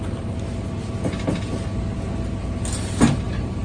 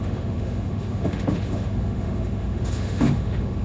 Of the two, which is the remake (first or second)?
second